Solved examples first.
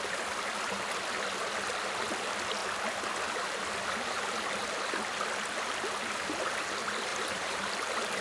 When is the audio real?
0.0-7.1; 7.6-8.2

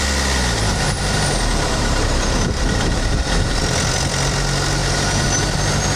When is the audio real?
0.0-0.7; 3.6-4.8; 5.3-6.0